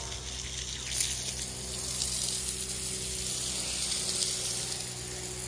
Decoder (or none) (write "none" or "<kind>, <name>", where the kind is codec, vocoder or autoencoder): none